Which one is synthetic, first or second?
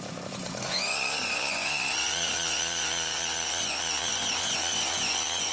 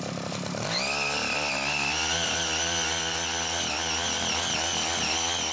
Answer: first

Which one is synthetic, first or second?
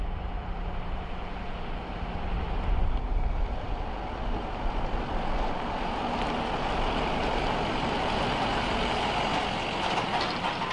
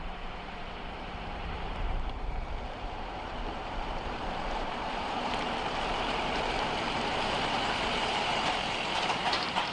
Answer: second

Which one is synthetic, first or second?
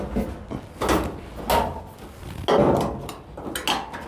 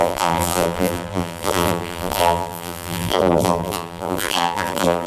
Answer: second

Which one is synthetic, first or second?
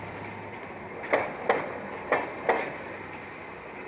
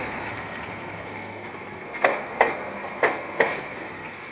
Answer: second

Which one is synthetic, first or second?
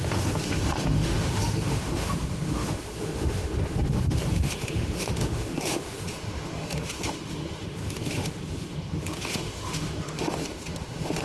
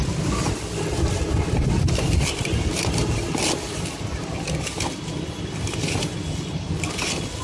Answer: first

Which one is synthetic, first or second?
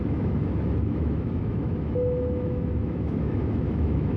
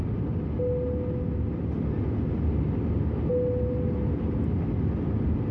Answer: first